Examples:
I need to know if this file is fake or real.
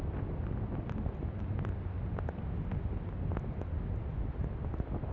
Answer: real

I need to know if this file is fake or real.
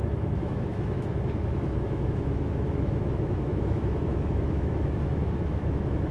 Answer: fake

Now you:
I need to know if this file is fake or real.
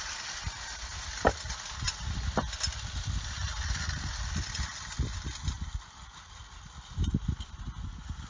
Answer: real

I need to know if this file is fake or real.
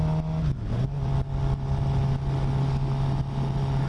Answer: real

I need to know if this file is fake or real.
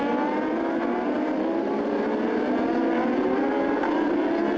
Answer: real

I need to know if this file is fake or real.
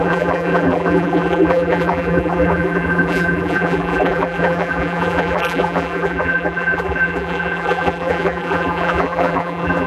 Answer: fake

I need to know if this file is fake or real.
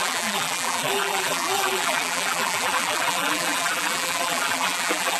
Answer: fake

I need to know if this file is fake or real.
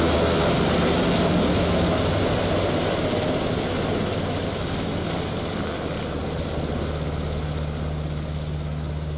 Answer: real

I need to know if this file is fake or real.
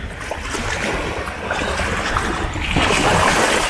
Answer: real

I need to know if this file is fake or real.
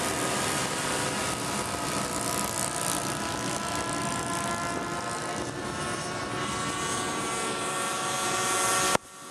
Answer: real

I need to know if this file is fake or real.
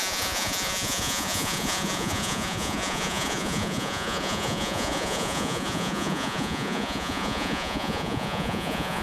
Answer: fake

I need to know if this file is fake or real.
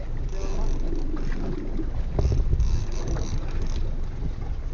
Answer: real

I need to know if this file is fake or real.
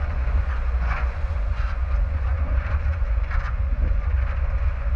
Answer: fake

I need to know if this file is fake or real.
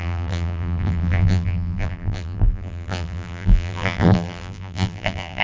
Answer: fake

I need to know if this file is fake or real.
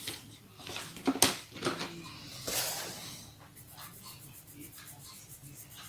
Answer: real